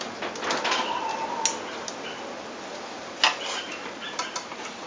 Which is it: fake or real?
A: real